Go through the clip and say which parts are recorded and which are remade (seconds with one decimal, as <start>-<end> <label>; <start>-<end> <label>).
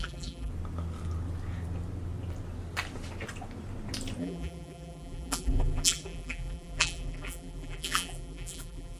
0.0-0.5 remade; 0.5-4.2 recorded; 4.2-9.0 remade